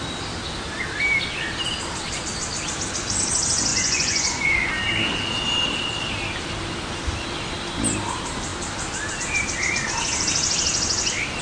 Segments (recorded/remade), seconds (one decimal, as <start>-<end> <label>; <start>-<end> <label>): 0.0-3.7 recorded; 3.7-4.7 remade; 4.7-11.4 recorded